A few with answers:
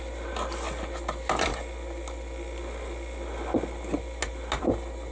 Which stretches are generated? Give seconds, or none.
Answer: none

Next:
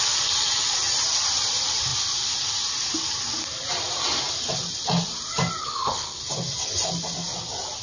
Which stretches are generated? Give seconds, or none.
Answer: 5.6-6.2